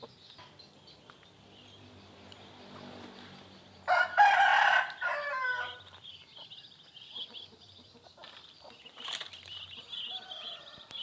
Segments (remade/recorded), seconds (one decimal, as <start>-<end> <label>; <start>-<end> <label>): 0.0-11.0 recorded